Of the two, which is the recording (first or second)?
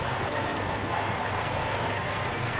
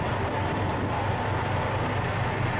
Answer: second